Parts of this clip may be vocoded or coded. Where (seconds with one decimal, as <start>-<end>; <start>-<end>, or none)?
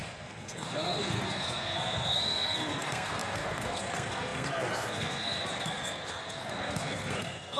0.0-7.6